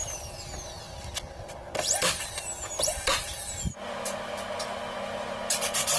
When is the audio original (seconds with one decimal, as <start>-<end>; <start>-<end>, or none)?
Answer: 0.0-3.1; 3.7-6.0